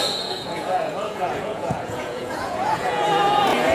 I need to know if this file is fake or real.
fake